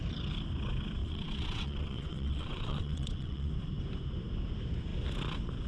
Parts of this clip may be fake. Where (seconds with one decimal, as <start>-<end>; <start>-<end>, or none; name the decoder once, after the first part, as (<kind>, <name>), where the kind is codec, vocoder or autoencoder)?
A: 1.0-3.5 (vocoder, WaveNeXt)